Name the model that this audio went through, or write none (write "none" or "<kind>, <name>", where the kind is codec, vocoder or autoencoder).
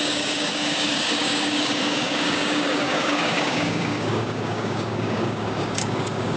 codec, DAC